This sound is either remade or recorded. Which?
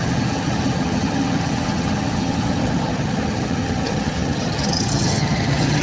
remade